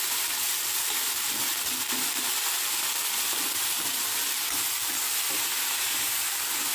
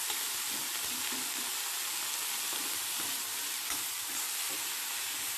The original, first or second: first